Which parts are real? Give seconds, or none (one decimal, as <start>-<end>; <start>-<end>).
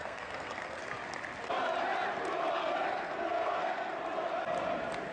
0.8-2.6; 3.9-5.1